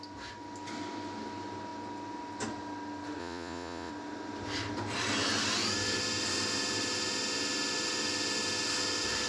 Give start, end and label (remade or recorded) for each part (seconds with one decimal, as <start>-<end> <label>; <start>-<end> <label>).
0.0-3.2 recorded; 3.2-3.9 remade; 3.9-9.3 recorded